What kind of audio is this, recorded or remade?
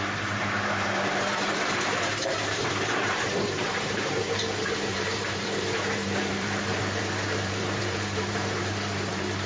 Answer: remade